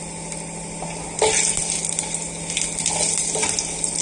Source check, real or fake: real